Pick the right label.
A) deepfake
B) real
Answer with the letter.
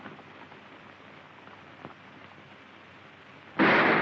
B